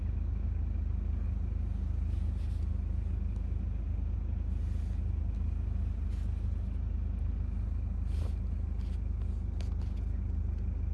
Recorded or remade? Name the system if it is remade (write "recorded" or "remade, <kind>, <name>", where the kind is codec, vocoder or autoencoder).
recorded